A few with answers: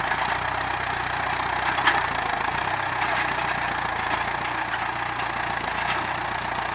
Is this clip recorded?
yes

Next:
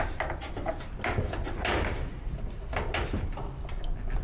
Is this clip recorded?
yes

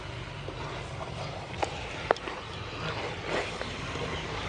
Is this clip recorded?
yes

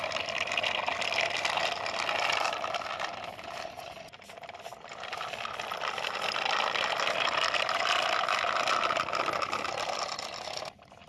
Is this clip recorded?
yes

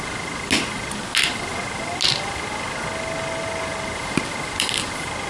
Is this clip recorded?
yes